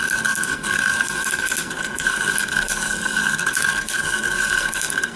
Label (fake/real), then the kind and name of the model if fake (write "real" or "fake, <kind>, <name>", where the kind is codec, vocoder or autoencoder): fake, codec, SNAC